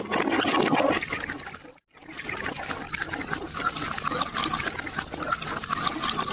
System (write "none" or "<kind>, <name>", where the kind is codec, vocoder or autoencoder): none